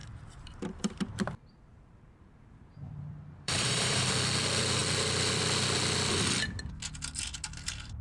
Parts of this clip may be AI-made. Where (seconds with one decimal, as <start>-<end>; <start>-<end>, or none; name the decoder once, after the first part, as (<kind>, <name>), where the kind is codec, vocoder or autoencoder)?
0.0-4.1 (vocoder, BigVGAN v2)